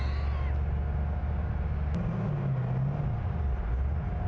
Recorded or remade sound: recorded